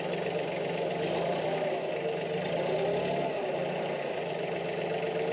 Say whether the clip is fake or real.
real